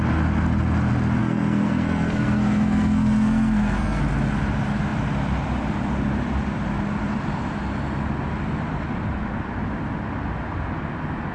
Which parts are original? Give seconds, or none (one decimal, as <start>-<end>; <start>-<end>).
0.0-1.2; 4.0-11.3